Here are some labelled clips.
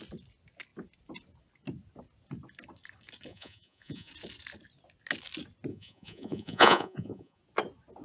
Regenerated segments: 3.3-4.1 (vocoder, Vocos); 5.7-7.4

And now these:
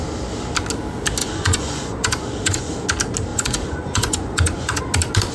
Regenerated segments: 1.2-2.7 (vocoder, Vocos); 3.3-4.8